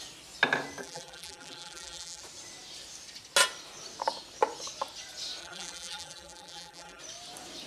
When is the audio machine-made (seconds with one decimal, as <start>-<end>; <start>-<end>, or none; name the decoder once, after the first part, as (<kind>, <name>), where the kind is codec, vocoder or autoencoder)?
0.8-2.2 (vocoder, BigVGAN v2); 5.4-7.0